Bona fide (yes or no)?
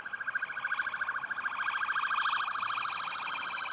yes